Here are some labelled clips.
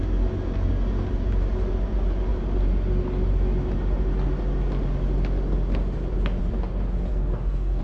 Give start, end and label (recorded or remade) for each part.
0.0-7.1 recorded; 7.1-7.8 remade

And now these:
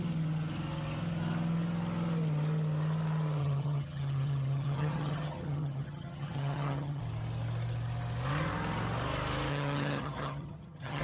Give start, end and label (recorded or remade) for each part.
0.0-3.4 recorded; 3.4-7.0 remade; 7.0-9.5 recorded; 9.5-11.0 remade

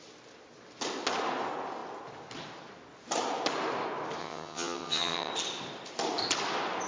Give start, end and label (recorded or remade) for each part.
0.0-4.2 recorded; 4.2-5.3 remade; 5.3-6.9 recorded

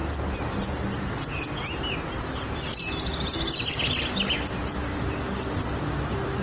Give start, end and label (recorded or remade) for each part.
0.0-6.4 recorded

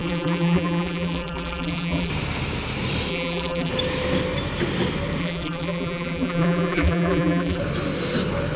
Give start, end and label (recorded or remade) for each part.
0.0-2.1 remade; 2.1-3.1 recorded; 3.1-3.7 remade; 3.7-5.2 recorded; 5.2-7.6 remade; 7.6-8.6 recorded

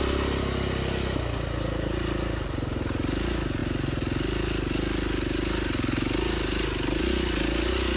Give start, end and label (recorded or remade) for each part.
0.0-8.0 recorded